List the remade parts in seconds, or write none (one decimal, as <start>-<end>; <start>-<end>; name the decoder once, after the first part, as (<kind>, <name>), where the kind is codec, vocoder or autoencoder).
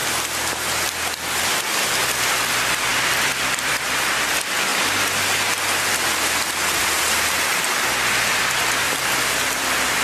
1.9-4.7 (vocoder, BigVGAN v2); 8.1-10.0